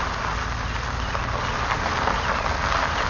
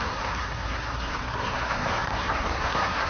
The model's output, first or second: second